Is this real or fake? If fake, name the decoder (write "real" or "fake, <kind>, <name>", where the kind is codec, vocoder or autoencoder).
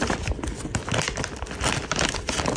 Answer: real